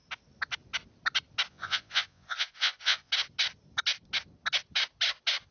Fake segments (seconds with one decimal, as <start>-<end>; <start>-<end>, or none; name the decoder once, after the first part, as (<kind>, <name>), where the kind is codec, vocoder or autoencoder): 1.5-3.1 (vocoder, Vocos)